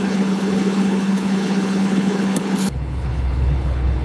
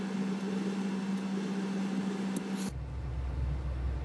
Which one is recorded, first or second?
second